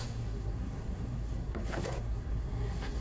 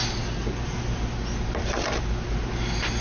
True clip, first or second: second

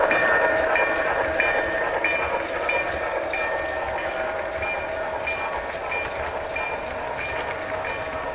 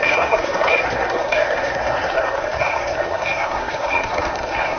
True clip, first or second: first